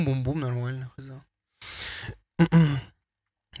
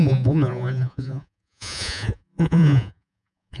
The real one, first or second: first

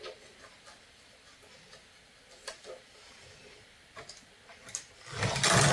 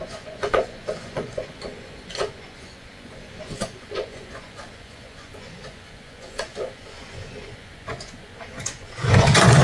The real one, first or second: first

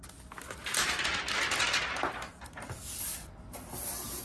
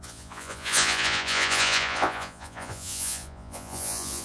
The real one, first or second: first